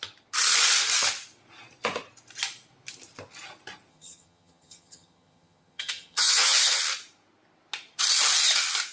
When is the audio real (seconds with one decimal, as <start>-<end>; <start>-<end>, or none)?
0.0-3.9; 6.8-8.9